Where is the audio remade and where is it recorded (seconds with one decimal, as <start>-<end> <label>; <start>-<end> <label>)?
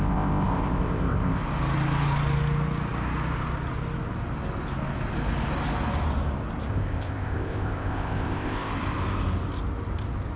0.0-1.4 remade; 1.4-6.7 recorded; 6.7-8.7 remade; 8.7-10.4 recorded